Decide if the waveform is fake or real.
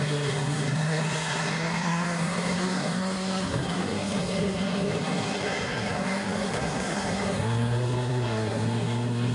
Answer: fake